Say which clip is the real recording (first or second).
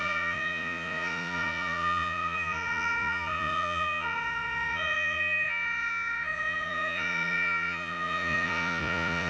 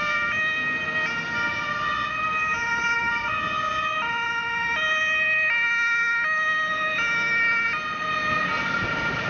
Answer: second